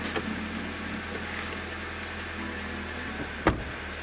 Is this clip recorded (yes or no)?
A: yes